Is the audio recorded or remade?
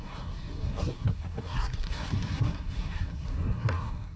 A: remade